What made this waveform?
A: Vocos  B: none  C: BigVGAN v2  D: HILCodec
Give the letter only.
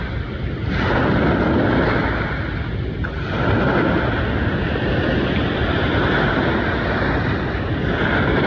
B